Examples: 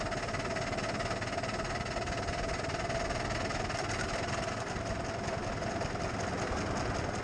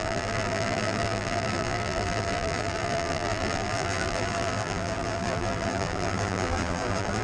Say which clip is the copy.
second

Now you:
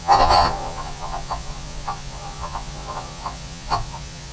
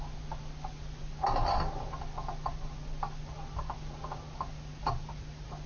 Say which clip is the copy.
first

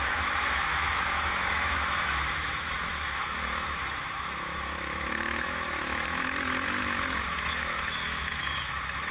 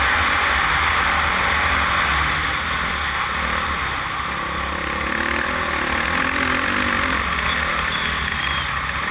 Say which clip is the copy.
first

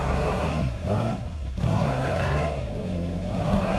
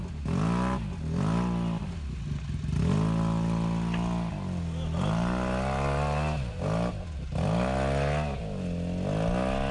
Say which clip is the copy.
first